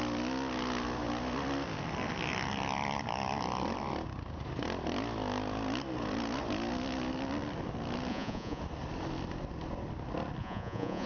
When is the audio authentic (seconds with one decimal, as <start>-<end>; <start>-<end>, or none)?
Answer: 0.0-8.1; 8.6-10.4